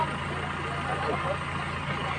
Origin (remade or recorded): recorded